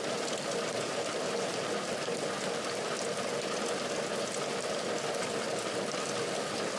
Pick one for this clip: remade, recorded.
recorded